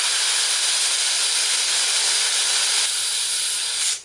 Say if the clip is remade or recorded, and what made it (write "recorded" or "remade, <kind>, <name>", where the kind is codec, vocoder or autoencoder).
recorded